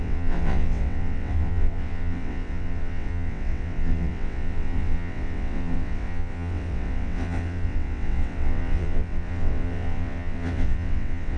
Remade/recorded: remade